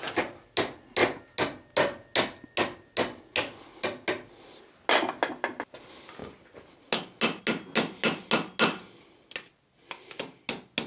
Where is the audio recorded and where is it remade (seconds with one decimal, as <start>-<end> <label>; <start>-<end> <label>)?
0.0-10.9 recorded